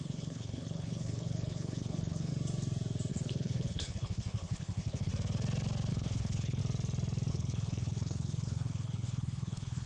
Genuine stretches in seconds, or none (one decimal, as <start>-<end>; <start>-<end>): 2.3-3.1; 5.1-5.9; 6.6-7.3